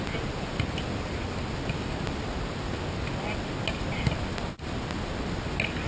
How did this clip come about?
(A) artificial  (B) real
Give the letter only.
B